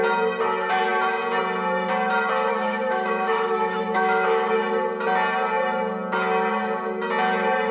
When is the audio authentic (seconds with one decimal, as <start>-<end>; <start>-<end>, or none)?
0.0-2.5; 4.5-7.7